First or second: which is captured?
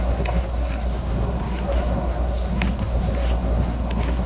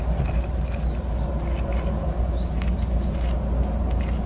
second